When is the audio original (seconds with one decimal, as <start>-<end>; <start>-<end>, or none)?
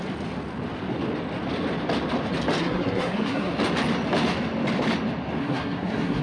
0.0-2.6; 3.5-5.4